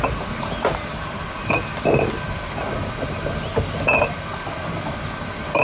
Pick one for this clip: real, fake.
real